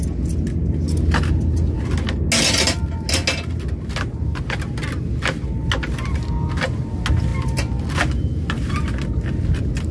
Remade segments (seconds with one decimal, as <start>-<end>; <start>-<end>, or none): none

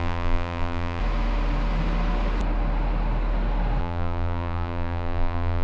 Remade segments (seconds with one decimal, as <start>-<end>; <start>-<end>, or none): 0.0-1.0; 3.8-5.6

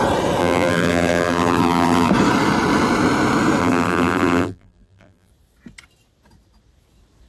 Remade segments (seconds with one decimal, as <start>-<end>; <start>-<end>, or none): 0.4-2.1; 3.6-5.3

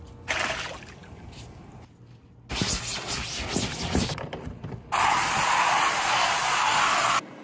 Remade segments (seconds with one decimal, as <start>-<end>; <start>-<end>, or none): none

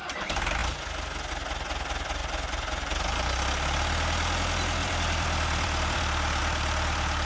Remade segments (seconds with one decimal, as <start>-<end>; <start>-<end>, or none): 2.2-3.0; 4.8-6.0; 6.4-7.3

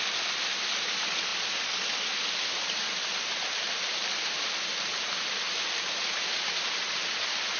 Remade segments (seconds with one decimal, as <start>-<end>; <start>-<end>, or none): none

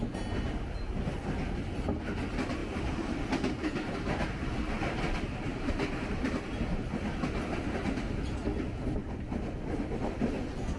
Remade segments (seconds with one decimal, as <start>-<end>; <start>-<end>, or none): 2.6-3.5; 5.5-6.3